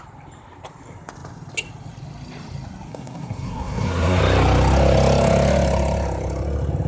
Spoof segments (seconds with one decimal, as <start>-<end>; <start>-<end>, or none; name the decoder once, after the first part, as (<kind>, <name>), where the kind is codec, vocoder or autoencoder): 2.9-4.2 (codec, SNAC)